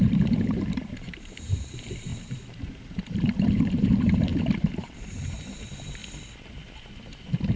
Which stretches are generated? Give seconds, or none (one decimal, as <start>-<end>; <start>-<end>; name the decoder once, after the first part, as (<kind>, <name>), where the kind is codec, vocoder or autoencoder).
0.0-6.0 (vocoder, BigVGAN v2); 7.0-7.6